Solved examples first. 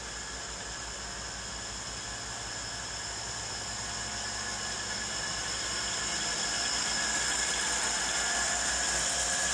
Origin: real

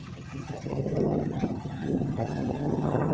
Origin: fake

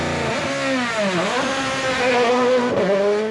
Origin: real